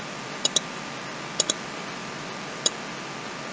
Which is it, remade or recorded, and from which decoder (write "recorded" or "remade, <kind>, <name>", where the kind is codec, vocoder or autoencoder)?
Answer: recorded